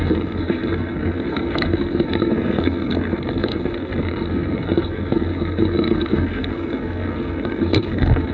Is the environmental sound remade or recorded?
remade